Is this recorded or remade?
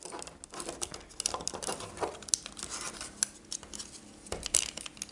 recorded